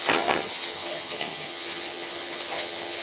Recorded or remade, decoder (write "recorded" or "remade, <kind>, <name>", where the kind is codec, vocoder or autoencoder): remade, vocoder, HiFi-GAN